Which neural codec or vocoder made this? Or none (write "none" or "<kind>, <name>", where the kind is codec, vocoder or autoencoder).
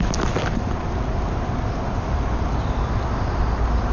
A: none